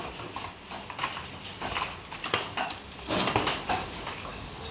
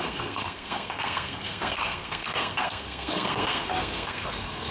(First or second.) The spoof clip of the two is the second